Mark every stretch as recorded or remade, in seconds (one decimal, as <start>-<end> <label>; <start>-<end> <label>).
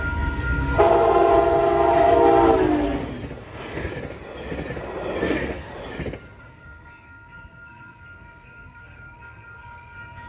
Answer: 0.0-1.3 remade; 1.3-3.4 recorded; 3.4-3.9 remade; 3.9-5.2 recorded; 5.2-5.7 remade; 5.7-6.4 recorded; 6.4-10.3 remade